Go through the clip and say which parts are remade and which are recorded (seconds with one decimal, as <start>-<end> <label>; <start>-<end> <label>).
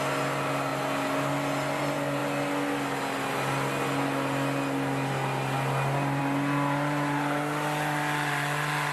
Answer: 0.0-8.9 recorded